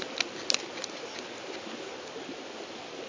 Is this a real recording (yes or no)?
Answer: yes